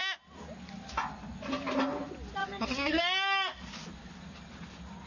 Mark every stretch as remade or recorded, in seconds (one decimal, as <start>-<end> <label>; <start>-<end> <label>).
0.0-2.4 recorded; 2.4-3.0 remade; 3.0-5.1 recorded